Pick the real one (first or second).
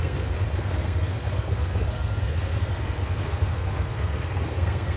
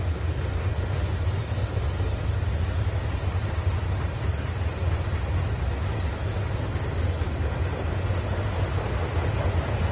second